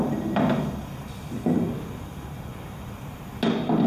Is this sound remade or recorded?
recorded